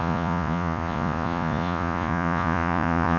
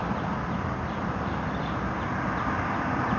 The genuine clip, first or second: second